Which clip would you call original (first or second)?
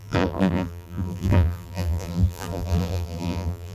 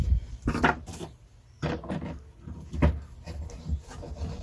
second